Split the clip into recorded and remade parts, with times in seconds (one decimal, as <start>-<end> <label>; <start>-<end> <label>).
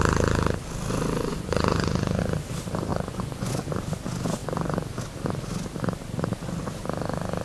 0.0-1.3 recorded; 1.3-2.2 remade; 2.2-2.9 recorded; 2.9-3.5 remade; 3.5-7.4 recorded